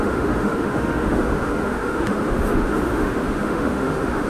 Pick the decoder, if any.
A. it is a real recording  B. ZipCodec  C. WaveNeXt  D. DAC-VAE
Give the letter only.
D